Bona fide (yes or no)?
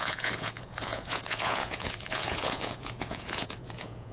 no